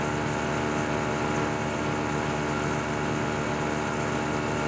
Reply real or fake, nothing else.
real